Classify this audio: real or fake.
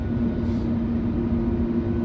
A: real